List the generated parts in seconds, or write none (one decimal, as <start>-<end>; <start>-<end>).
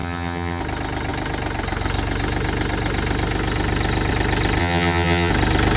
0.0-0.6; 4.6-5.3